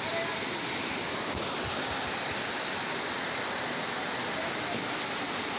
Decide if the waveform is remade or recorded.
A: recorded